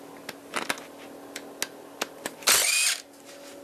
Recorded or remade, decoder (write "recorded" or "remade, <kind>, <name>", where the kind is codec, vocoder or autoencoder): recorded